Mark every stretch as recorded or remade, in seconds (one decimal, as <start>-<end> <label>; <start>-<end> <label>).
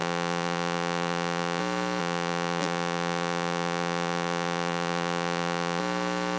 0.0-1.6 remade; 1.6-2.0 recorded; 2.0-5.8 remade; 5.8-6.4 recorded